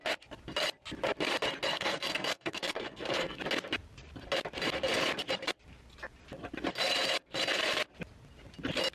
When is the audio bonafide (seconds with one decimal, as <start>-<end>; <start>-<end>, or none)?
0.0-1.7; 3.4-8.9